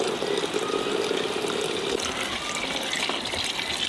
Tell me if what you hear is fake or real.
real